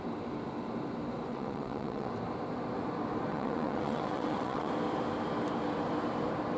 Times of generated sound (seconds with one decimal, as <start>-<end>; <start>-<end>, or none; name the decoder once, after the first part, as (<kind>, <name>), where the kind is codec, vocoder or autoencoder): 1.3-2.1 (vocoder, WaveNeXt); 3.3-4.7